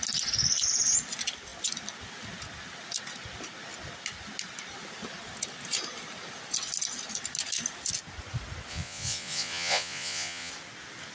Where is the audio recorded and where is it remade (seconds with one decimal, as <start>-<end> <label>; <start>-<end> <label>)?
0.0-8.7 recorded; 8.7-10.5 remade; 10.5-11.1 recorded